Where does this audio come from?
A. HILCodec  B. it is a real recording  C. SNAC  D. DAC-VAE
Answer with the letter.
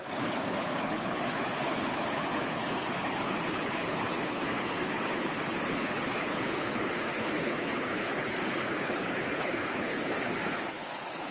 A